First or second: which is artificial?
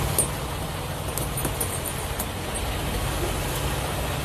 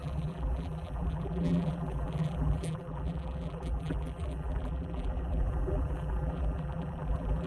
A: second